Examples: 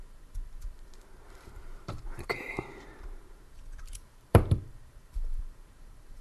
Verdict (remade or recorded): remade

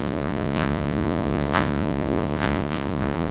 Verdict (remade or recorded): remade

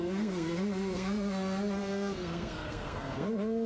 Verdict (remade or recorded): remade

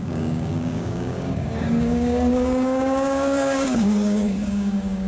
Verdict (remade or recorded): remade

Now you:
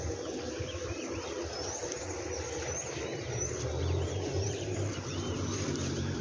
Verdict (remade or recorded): remade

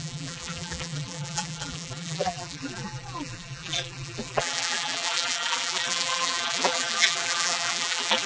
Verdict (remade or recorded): remade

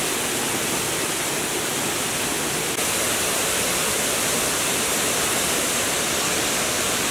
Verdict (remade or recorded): recorded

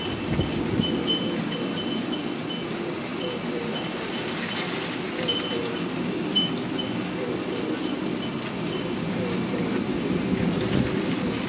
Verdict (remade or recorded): recorded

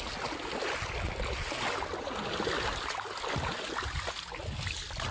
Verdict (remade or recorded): recorded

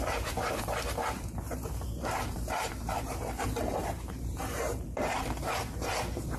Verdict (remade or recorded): remade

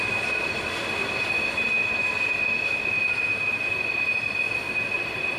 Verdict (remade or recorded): recorded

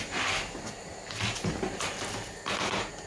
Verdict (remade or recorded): recorded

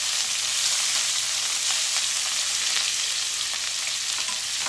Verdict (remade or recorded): recorded